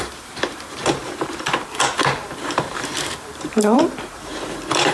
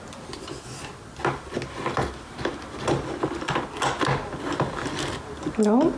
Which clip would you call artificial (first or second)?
first